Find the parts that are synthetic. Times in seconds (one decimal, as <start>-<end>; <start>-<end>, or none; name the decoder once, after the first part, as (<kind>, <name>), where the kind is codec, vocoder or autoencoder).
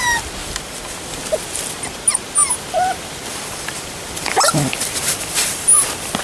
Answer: 0.4-1.2 (vocoder, BigVGAN v2); 3.3-5.7